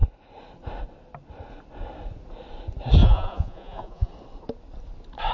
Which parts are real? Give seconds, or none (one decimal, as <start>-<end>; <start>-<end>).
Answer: 0.0-3.0; 4.1-5.3

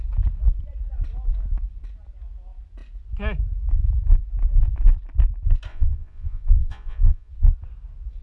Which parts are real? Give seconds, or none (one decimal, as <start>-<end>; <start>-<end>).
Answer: 0.0-5.7; 7.3-8.2

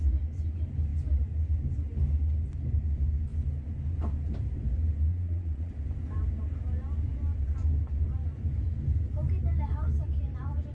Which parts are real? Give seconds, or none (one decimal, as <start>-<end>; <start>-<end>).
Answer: 0.0-5.1; 5.7-10.7

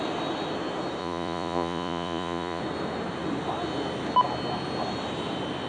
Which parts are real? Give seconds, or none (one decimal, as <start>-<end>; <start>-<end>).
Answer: 0.0-1.0; 2.6-5.7

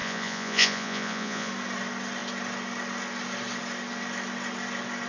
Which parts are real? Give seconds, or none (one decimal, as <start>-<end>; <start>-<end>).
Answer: 1.5-5.1